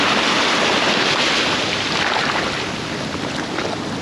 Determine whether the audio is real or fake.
real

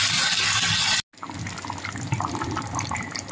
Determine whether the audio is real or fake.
real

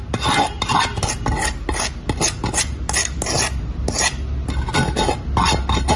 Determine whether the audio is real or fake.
real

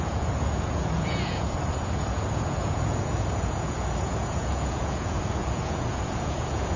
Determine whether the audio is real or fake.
fake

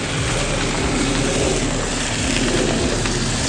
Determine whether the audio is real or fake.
real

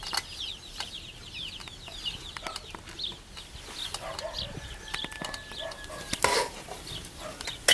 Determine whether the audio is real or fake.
real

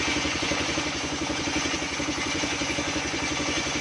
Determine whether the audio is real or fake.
fake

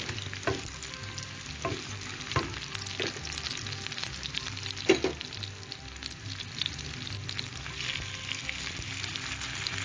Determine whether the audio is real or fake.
real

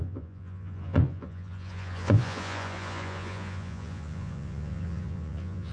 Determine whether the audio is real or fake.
fake